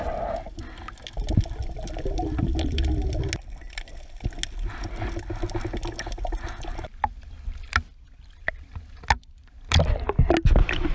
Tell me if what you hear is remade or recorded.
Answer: recorded